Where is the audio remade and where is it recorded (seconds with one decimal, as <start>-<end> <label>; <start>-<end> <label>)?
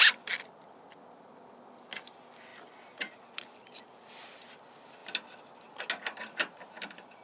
0.0-7.2 recorded